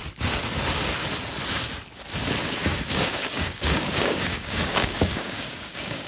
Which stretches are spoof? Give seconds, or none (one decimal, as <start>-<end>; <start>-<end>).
2.7-6.1